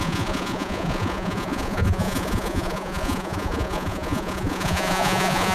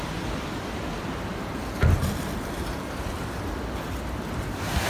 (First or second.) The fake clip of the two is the first